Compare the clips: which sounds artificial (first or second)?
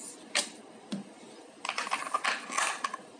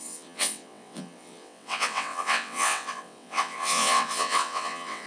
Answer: second